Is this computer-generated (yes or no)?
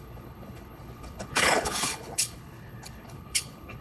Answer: yes